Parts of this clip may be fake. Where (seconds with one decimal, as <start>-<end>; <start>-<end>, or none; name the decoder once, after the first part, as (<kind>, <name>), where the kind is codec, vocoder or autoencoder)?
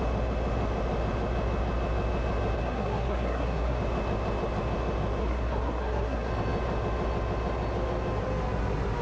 2.6-3.8 (codec, SNAC); 5.2-6.3